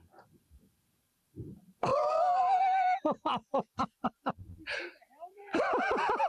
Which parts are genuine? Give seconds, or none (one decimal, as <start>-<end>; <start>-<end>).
1.9-2.4